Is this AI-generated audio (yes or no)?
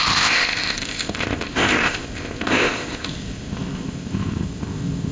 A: yes